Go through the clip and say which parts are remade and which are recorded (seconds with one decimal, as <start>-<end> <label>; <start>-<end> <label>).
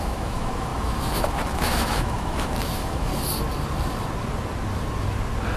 0.0-3.1 remade; 3.1-5.6 recorded